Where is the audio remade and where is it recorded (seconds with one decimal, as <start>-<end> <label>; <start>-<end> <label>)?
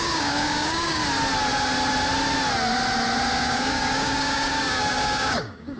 0.0-1.0 remade; 1.0-3.4 recorded; 3.4-5.8 remade